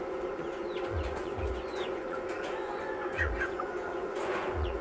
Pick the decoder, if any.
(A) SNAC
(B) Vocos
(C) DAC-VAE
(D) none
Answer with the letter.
B